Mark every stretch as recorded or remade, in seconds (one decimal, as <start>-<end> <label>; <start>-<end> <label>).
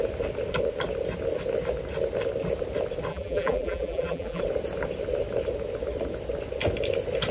0.0-3.1 recorded; 3.1-4.4 remade; 4.4-7.3 recorded